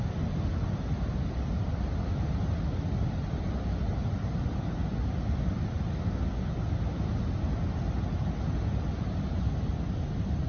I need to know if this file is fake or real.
real